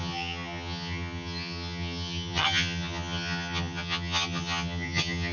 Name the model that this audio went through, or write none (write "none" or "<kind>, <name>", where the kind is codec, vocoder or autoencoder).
vocoder, HiFi-GAN